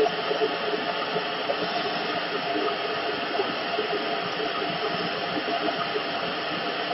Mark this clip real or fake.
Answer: real